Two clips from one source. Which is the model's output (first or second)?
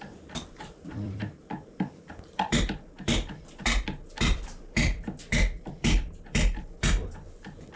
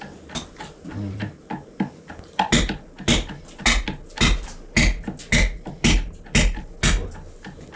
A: first